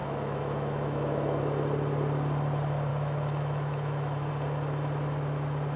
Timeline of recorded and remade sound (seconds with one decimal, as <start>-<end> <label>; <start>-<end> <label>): 0.0-1.4 remade; 1.4-2.9 recorded; 2.9-4.3 remade; 4.3-5.8 recorded